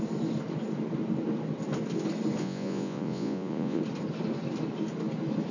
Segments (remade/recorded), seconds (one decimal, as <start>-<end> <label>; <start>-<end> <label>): 0.0-2.4 recorded; 2.4-3.8 remade; 3.8-5.5 recorded